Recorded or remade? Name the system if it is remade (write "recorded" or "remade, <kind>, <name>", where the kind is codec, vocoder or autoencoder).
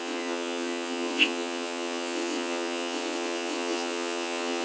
remade, vocoder, WaveNeXt